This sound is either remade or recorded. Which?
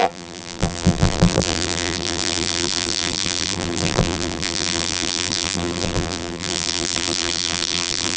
remade